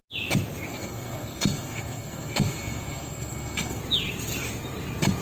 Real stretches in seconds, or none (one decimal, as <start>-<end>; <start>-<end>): 0.0-0.7; 3.8-5.2